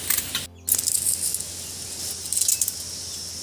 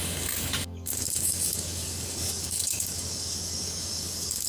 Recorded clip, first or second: first